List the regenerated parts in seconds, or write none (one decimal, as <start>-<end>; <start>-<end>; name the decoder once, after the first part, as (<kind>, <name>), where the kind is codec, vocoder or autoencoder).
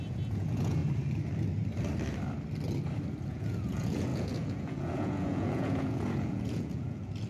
0.0-0.8 (vocoder, Vocos); 3.3-7.3